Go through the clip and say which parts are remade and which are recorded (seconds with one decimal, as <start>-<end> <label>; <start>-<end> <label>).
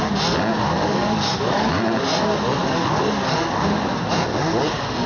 0.0-0.8 recorded; 0.8-1.8 remade; 1.8-2.6 recorded; 2.6-3.6 remade; 3.6-5.1 recorded